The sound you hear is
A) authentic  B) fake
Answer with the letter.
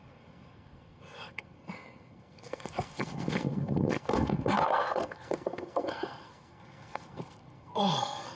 B